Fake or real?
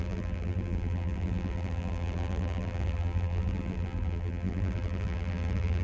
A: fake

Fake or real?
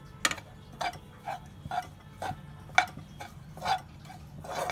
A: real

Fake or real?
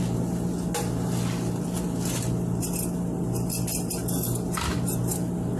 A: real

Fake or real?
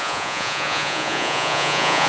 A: fake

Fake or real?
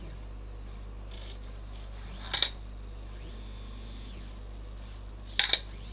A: real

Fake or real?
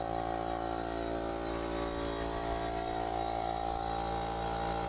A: real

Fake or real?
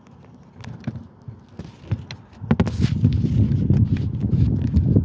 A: real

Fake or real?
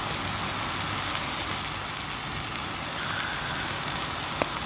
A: real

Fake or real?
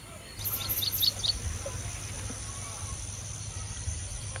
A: real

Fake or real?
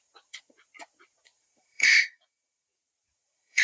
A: fake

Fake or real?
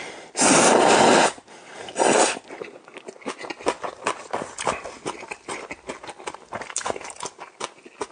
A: real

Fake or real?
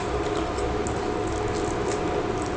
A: real